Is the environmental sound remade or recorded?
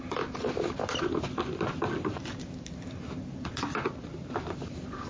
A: recorded